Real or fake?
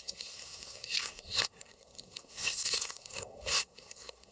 fake